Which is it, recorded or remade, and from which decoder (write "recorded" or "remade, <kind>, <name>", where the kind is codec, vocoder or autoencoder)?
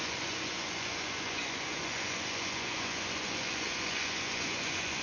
remade, vocoder, Vocos